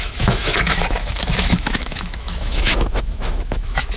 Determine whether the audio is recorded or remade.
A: remade